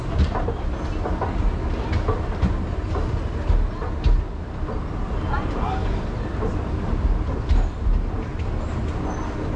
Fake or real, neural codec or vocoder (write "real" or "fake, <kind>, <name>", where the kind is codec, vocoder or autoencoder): real